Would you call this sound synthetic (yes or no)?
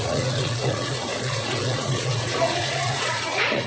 yes